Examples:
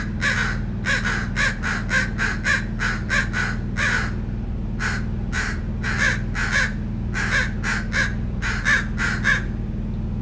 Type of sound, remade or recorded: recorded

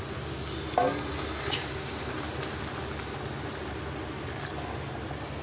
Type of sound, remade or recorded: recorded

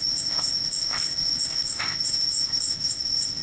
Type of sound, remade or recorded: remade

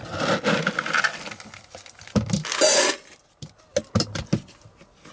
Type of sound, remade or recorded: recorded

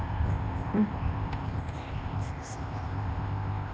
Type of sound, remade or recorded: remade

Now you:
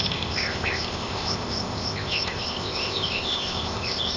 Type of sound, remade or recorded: remade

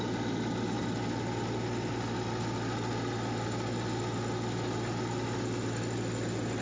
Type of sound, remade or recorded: recorded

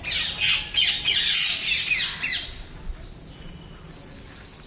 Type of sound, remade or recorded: recorded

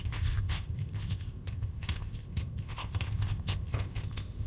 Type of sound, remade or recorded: remade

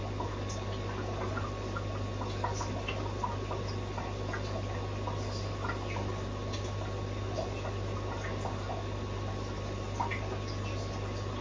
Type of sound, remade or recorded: recorded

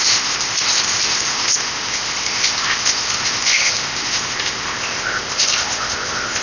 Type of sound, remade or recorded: remade